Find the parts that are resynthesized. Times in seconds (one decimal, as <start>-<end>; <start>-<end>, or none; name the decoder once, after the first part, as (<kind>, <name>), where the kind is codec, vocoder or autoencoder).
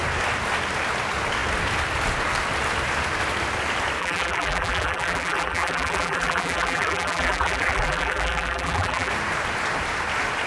4.0-9.1 (vocoder, BigVGAN v2)